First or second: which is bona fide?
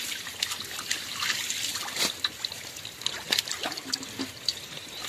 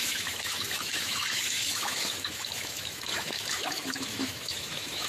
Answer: first